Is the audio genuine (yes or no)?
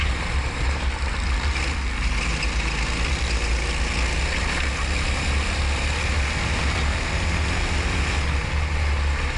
yes